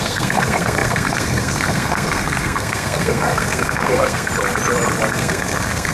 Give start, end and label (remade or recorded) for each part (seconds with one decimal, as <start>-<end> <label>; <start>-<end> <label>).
0.0-4.3 remade; 4.3-5.1 recorded; 5.1-5.9 remade